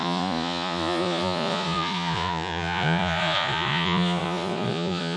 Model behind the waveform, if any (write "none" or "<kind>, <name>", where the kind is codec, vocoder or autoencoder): vocoder, Vocos